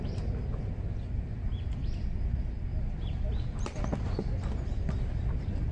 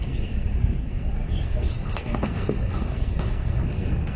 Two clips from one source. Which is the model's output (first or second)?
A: second